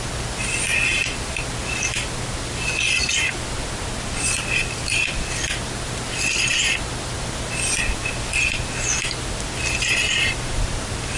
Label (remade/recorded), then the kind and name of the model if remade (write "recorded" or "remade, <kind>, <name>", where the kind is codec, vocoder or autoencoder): recorded